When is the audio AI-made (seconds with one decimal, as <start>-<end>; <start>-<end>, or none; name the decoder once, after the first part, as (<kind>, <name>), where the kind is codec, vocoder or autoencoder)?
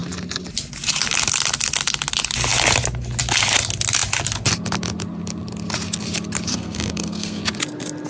6.5-7.4 (codec, SNAC)